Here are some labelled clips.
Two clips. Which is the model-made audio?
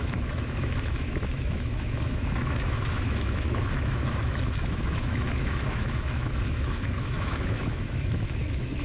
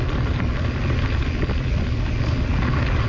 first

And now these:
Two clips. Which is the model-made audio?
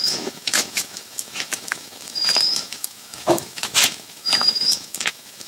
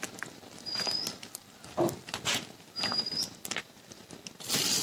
first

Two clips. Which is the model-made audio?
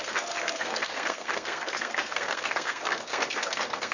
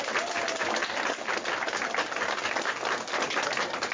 first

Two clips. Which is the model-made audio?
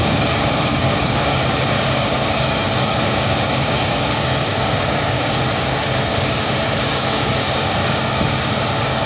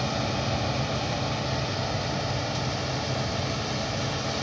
first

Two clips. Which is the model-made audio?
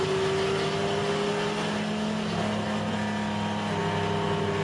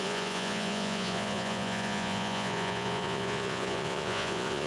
second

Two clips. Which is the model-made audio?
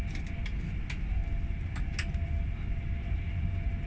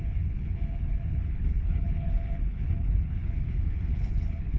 second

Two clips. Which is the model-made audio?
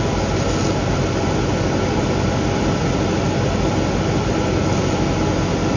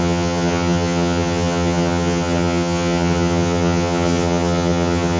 second